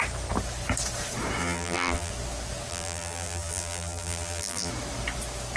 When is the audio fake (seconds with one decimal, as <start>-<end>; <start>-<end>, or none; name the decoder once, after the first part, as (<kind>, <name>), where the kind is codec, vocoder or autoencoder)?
1.4-2.1 (vocoder, BigVGAN v2); 2.7-4.7